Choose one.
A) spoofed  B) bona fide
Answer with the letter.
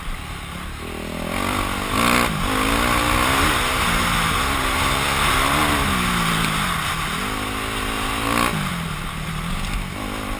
B